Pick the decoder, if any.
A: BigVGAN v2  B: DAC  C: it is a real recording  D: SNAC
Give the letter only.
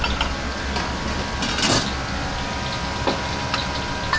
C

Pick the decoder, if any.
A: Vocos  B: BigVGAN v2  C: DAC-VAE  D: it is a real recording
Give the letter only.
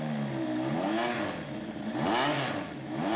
D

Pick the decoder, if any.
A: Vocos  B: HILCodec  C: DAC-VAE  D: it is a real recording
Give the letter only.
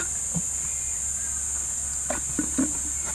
D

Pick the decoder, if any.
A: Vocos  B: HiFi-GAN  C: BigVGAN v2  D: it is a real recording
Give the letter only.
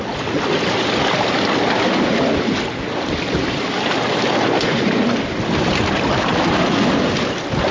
D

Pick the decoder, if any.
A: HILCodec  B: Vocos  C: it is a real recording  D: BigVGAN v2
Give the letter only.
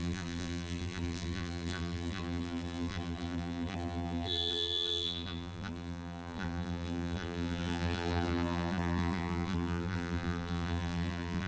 D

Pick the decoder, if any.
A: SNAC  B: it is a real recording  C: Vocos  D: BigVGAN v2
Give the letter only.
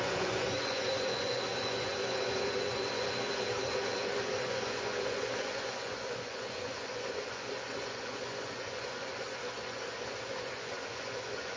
C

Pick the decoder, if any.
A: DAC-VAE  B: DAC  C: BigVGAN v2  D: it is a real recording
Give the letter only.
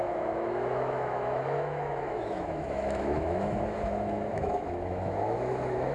A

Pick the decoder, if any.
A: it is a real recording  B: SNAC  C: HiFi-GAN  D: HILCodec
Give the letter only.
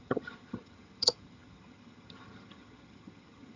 C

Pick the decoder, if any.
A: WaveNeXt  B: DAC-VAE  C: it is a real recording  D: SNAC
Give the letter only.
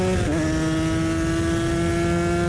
C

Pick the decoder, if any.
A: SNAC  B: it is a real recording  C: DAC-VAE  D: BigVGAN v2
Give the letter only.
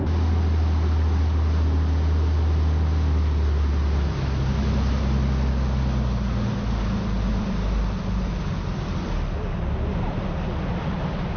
B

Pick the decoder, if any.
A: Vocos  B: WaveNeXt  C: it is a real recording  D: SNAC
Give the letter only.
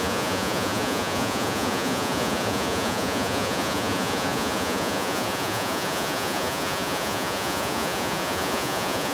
A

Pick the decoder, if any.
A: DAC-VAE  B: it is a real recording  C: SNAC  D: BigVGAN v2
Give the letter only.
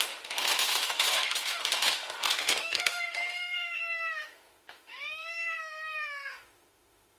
A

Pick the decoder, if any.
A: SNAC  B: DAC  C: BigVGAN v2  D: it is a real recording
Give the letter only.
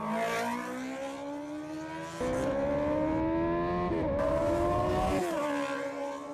D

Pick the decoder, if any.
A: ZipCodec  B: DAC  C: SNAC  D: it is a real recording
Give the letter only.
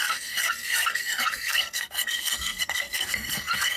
C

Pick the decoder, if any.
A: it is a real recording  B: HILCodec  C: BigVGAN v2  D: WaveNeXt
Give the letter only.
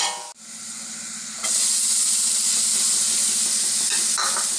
A